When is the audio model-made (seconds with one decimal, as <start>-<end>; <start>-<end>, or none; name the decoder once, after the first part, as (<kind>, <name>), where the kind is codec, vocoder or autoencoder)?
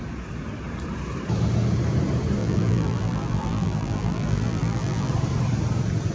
2.4-5.1 (vocoder, BigVGAN v2)